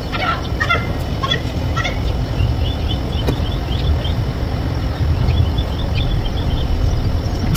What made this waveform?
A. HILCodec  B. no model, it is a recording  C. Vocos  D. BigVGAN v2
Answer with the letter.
B